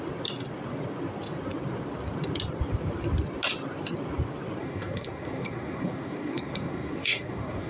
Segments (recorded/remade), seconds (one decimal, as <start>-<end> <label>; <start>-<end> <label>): 0.0-4.6 recorded; 4.6-7.7 remade